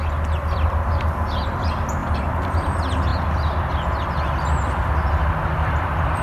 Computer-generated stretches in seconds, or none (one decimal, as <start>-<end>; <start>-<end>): 2.0-2.7